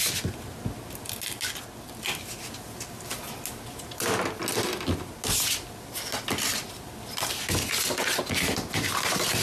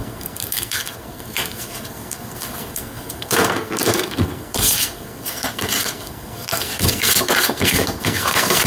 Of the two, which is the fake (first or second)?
second